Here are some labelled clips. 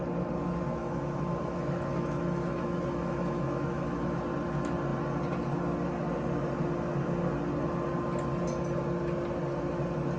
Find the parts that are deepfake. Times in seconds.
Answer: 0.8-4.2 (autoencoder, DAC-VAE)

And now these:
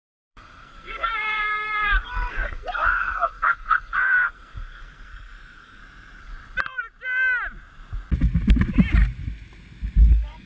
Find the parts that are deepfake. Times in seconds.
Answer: 0.0-5.8 (codec, SNAC); 10.1-10.5

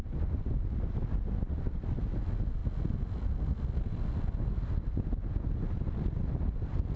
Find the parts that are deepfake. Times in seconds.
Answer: none